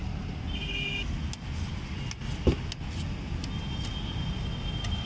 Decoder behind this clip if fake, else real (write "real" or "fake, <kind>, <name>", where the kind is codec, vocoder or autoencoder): real